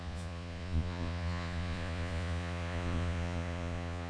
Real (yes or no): no